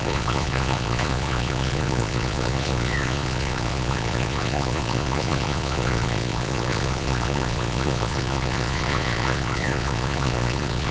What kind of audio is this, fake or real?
fake